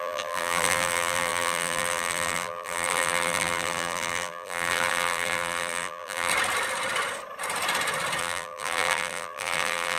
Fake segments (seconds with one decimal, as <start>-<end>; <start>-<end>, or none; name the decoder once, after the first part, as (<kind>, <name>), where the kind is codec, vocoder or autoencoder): 0.0-6.3 (vocoder, BigVGAN v2); 8.2-10.0